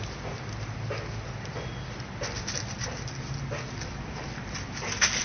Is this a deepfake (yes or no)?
no